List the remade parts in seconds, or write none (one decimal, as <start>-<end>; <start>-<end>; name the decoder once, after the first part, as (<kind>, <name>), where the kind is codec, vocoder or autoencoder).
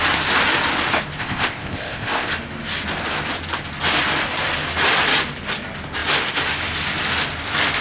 1.2-2.3 (codec, ZipCodec)